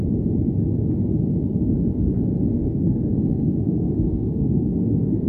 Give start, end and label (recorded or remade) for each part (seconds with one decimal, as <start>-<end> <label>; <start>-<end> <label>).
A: 0.0-2.5 recorded; 2.5-5.3 remade